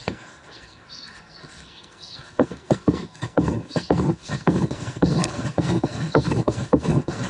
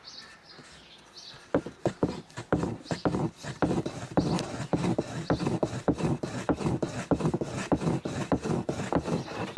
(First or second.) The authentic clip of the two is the second